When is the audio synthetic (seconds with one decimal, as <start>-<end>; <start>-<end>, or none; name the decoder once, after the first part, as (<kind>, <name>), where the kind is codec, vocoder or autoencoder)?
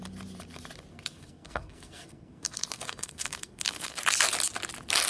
0.9-4.0 (codec, SNAC)